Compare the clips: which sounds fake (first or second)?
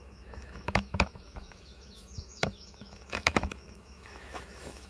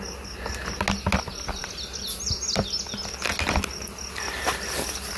first